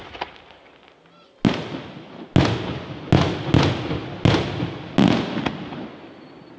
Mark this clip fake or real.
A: real